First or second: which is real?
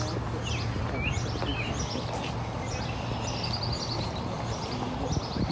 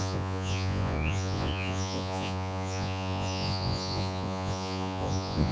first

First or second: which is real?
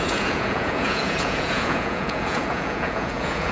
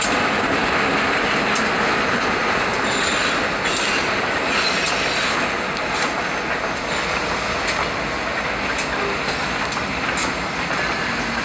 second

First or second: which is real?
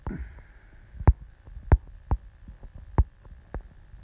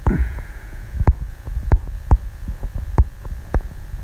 first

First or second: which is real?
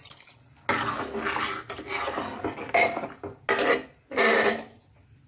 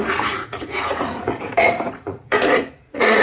first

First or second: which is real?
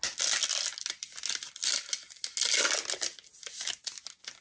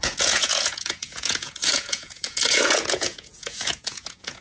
first